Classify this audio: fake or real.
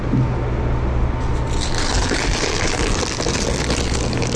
real